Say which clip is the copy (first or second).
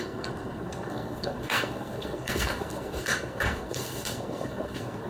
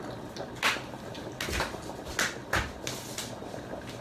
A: first